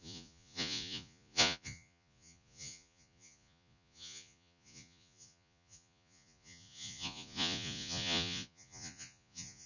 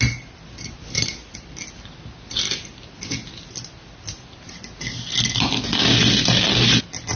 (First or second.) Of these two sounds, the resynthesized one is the first